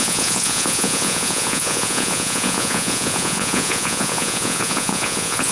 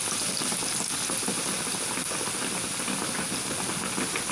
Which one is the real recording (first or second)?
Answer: second